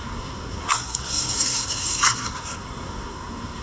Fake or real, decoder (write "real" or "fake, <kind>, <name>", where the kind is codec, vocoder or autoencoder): fake, codec, SNAC